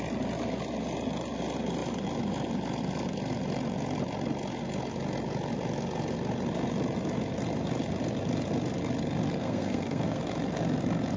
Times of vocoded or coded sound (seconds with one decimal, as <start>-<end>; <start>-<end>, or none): 9.4-10.2